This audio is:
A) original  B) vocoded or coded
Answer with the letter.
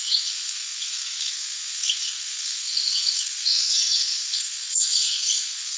B